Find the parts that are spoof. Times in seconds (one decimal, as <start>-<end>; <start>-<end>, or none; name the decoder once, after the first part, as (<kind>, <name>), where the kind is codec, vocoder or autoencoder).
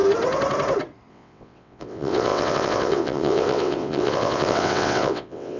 1.1-5.6 (vocoder, WaveNeXt)